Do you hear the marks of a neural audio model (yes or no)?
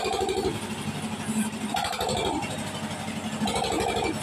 no